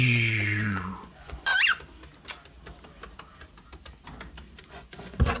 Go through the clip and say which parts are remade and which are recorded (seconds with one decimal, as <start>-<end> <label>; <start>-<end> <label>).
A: 0.0-1.5 remade; 1.5-4.7 recorded; 4.7-5.4 remade